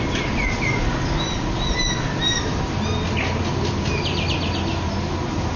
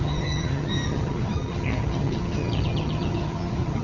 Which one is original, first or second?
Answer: first